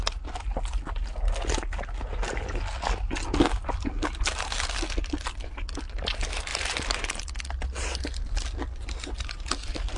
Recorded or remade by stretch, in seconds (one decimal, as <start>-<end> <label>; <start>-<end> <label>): 0.0-6.5 recorded; 6.5-7.2 remade; 7.2-10.0 recorded